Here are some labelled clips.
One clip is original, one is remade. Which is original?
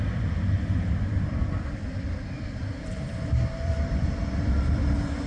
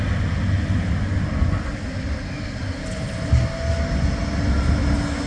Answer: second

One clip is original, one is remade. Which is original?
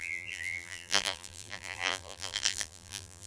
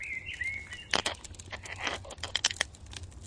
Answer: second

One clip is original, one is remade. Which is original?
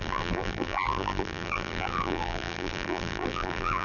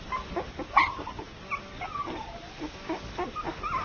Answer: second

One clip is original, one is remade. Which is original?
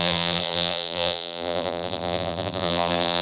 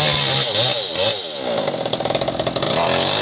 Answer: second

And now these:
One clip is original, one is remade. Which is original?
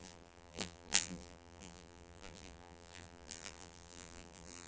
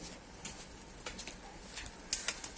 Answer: second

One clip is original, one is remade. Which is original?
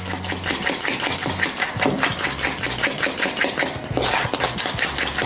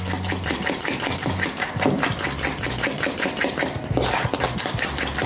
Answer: first